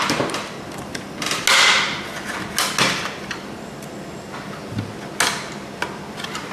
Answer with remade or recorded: recorded